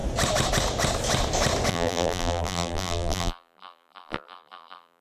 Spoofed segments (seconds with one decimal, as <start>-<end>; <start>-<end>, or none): 1.7-5.0